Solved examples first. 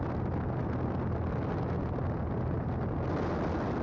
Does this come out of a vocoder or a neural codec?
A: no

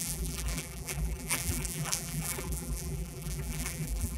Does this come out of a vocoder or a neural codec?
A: yes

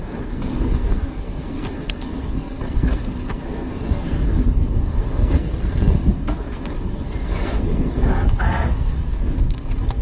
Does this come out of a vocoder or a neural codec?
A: yes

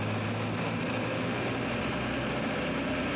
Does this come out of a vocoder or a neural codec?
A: no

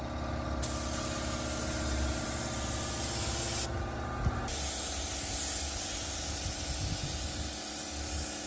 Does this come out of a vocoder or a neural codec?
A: no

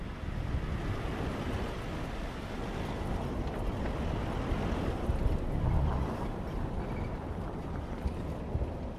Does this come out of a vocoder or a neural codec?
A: no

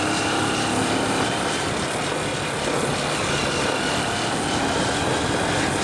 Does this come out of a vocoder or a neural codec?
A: no